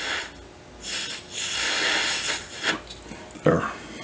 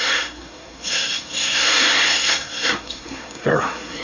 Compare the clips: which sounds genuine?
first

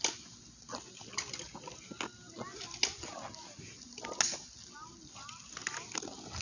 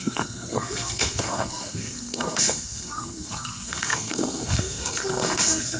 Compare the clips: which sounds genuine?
first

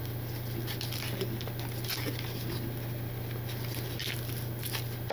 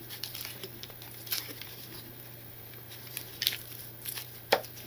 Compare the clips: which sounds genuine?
first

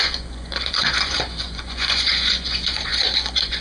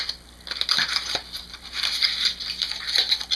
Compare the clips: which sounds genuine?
second